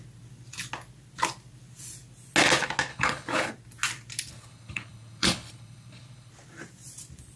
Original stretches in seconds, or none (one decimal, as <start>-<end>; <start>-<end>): 0.0-2.9; 3.5-4.3; 6.3-7.4